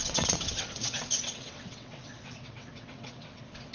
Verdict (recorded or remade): remade